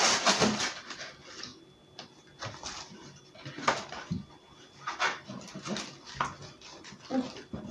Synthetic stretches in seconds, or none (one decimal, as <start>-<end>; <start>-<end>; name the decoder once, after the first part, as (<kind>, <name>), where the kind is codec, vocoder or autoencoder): none

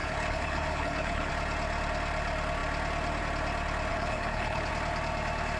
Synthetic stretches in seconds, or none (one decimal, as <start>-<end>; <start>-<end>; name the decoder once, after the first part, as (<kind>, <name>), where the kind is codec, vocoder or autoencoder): 0.0-1.3 (codec, HILCodec); 3.9-4.7

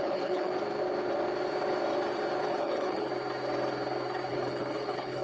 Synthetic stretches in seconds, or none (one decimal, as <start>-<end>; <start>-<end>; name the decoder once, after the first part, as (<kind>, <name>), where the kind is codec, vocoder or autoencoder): 0.0-0.5 (codec, HILCodec); 2.5-3.1; 4.3-5.2